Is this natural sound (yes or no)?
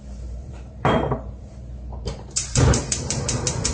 no